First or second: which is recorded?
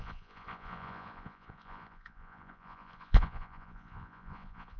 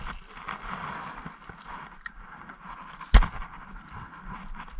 second